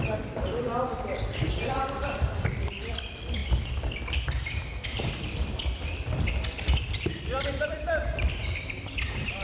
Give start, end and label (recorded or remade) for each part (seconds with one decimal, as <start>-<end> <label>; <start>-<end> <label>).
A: 0.0-9.4 recorded